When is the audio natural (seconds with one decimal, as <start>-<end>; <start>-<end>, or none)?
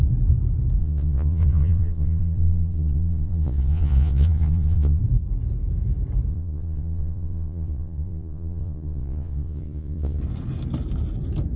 0.0-0.8; 5.0-6.3; 10.2-11.6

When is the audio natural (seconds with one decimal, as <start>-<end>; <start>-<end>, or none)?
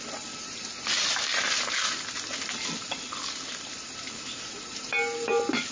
0.0-5.7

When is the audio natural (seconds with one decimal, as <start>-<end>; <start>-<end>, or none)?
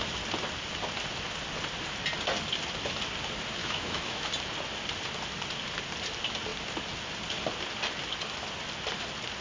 0.0-3.6; 4.3-9.4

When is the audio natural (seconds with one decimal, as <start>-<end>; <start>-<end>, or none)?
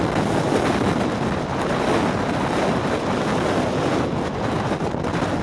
0.0-5.4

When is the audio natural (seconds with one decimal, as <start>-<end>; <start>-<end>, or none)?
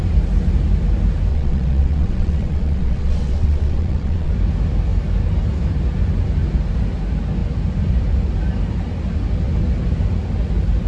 0.0-1.3; 4.3-10.9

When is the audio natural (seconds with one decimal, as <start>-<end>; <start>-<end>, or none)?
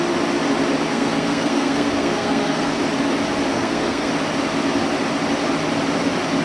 0.0-0.9; 2.8-3.5; 4.1-6.4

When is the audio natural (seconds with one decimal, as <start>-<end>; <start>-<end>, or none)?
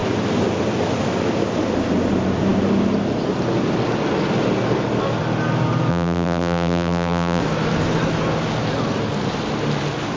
0.0-5.9; 7.4-10.2